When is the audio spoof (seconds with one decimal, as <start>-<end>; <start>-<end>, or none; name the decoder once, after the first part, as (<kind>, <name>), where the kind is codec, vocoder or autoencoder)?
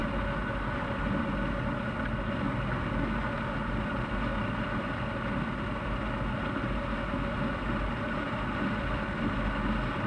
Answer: none